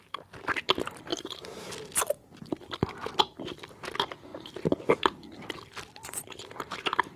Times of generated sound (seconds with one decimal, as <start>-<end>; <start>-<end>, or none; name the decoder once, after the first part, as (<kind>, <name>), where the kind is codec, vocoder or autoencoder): 1.1-1.7 (vocoder, BigVGAN v2)